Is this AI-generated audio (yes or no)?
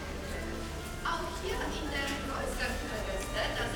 no